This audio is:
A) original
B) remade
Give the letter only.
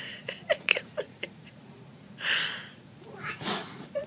B